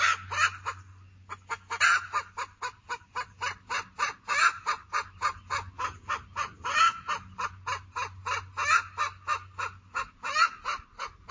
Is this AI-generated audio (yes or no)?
no